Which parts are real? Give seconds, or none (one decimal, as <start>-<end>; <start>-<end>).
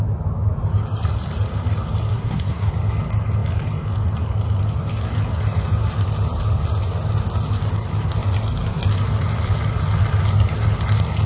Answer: 0.0-2.1; 2.7-11.3